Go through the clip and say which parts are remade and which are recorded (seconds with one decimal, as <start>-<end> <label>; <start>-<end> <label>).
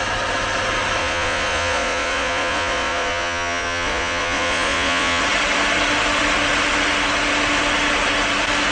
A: 0.0-1.0 recorded; 1.0-5.2 remade; 5.2-8.7 recorded